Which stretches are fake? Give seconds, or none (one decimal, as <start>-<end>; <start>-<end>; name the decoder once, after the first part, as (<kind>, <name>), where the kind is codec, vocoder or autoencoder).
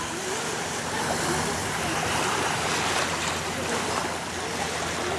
1.6-4.3 (vocoder, BigVGAN v2)